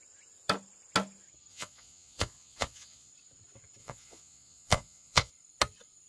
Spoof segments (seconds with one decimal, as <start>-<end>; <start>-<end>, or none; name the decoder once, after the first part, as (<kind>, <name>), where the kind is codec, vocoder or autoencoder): 1.5-3.1 (vocoder, Vocos); 3.8-5.3